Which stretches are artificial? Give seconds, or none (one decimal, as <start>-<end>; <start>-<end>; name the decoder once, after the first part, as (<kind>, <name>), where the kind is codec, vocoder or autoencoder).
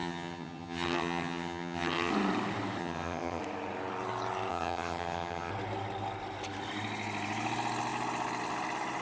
0.0-2.1 (vocoder, HiFi-GAN); 2.8-3.4; 4.5-5.5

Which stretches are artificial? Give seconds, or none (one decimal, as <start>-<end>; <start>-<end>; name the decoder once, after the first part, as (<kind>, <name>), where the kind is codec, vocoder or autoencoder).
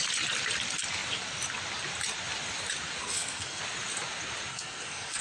3.0-3.6 (codec, SNAC); 4.5-5.2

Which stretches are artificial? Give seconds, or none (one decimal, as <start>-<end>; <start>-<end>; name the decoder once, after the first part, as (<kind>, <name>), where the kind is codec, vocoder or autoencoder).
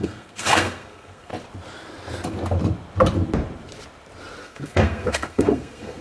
0.0-1.3 (codec, SNAC); 4.4-6.0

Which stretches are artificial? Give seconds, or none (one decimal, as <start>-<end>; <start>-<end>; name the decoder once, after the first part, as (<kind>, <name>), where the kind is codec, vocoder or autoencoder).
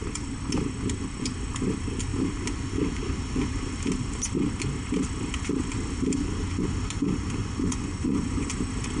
7.4-8.5 (vocoder, Vocos)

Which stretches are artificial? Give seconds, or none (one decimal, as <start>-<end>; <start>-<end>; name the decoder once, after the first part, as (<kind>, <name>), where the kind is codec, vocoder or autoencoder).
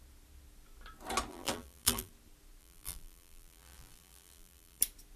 1.3-2.1 (vocoder, BigVGAN v2); 2.6-4.8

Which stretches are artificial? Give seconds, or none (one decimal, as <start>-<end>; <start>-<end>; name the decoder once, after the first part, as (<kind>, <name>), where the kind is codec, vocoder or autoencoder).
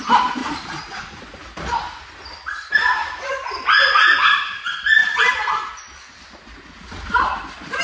0.4-1.2 (vocoder, Vocos)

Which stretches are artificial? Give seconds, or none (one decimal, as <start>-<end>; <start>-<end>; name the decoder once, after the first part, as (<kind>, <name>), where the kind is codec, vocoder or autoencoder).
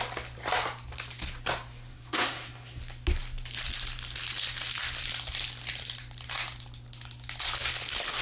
1.9-2.8 (codec, SNAC)